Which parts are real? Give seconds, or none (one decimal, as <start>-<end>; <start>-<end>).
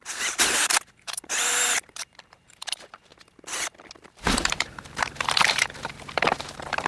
3.1-4.1